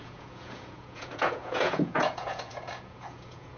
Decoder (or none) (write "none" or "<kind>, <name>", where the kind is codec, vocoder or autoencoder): vocoder, Vocos